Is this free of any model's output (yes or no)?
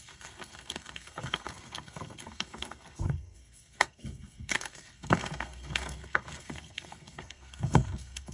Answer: no